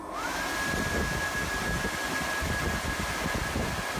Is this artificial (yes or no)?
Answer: no